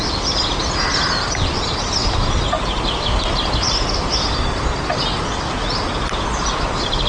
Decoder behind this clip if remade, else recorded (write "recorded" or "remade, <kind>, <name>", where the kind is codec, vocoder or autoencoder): recorded